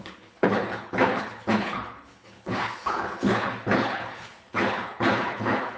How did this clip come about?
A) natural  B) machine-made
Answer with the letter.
B